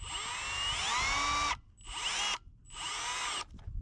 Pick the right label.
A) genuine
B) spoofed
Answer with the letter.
A